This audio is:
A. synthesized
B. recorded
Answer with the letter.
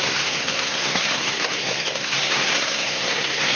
A